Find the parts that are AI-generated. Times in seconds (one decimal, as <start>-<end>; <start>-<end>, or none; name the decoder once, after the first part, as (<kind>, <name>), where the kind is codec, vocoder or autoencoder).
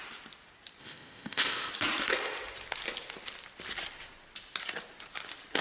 0.8-1.7 (codec, ZipCodec)